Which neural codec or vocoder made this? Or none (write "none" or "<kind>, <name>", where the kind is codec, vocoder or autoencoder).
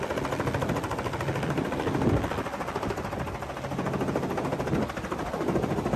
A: none